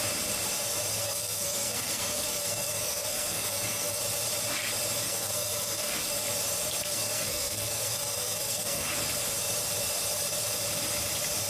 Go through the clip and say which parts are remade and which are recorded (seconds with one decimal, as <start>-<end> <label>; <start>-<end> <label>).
0.0-1.0 recorded; 1.0-4.0 remade; 4.0-5.0 recorded; 5.0-6.0 remade; 6.0-6.8 recorded; 6.8-8.9 remade; 8.9-11.5 recorded